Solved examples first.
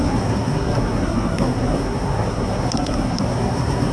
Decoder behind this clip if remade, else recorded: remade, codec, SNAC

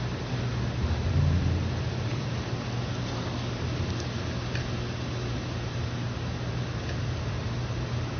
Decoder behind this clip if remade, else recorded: recorded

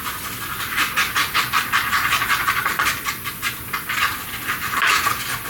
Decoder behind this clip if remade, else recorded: recorded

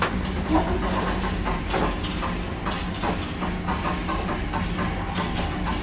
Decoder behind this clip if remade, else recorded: recorded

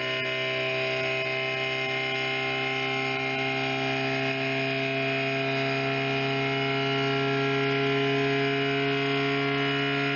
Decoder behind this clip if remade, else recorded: recorded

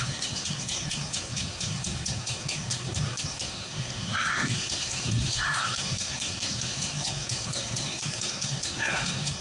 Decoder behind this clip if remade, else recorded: remade, codec, SNAC